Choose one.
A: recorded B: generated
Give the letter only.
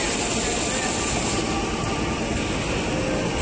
A